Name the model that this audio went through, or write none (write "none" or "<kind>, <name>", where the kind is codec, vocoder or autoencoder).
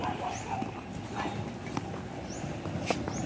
none